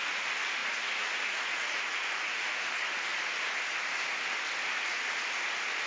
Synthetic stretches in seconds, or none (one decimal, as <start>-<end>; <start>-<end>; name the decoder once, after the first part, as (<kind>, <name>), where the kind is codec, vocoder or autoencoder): 0.6-2.7 (vocoder, Vocos)